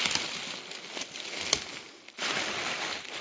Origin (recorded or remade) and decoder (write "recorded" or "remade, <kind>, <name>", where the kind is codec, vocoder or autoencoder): recorded